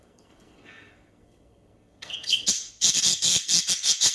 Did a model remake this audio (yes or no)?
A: yes